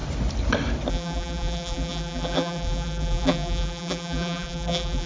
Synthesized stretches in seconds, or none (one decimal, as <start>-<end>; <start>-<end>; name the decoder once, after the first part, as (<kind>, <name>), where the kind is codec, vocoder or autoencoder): 0.9-5.1 (vocoder, BigVGAN v2)